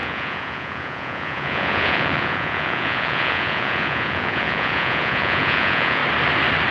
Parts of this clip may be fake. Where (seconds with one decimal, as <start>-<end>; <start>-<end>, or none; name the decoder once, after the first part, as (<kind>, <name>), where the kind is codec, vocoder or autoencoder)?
0.0-6.0 (vocoder, Vocos)